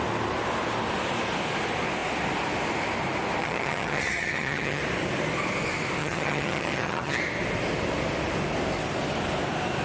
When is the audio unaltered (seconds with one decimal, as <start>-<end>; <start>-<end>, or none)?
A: 0.0-3.4; 4.8-6.0; 7.2-9.8